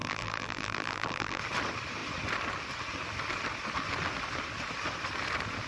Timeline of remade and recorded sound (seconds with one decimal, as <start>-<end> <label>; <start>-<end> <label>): 0.0-1.4 remade; 1.4-5.7 recorded

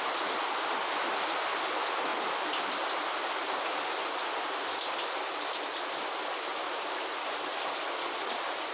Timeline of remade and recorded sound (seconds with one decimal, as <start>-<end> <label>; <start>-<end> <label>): 0.0-2.1 recorded; 2.1-3.0 remade; 3.0-6.5 recorded; 6.5-7.4 remade; 7.4-8.7 recorded

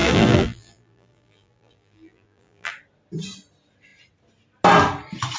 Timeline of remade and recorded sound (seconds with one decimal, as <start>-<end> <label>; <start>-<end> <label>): 0.0-2.7 remade; 2.7-5.4 recorded

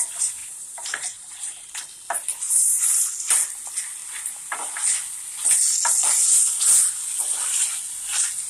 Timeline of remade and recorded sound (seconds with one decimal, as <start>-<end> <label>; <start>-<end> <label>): 0.0-0.4 recorded; 0.4-1.7 remade; 1.7-2.6 recorded; 2.6-3.1 remade; 3.1-8.5 recorded

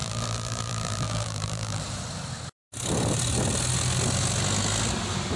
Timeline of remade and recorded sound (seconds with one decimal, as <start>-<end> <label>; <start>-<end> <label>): 0.0-1.8 remade; 1.8-5.4 recorded

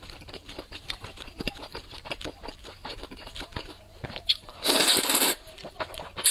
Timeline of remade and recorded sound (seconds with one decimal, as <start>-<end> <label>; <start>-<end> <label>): 0.0-4.5 remade; 4.5-6.3 recorded

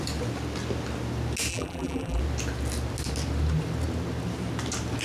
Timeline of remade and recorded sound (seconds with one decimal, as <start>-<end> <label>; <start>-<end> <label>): 0.0-1.5 recorded; 1.5-2.2 remade; 2.2-5.0 recorded

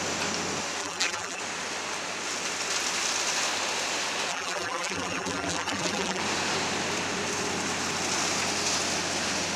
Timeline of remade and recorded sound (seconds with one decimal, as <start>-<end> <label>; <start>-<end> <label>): 0.0-0.8 recorded; 0.8-1.4 remade; 1.4-4.3 recorded; 4.3-6.2 remade; 6.2-9.6 recorded